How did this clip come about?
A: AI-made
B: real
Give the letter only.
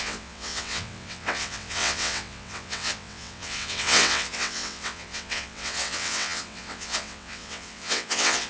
A